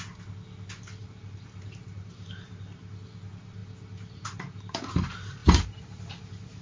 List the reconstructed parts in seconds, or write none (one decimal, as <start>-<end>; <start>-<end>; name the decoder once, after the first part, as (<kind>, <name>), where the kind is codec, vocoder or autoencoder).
1.0-3.1 (vocoder, BigVGAN v2); 3.6-4.9; 5.4-6.6